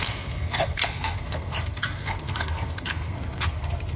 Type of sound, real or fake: fake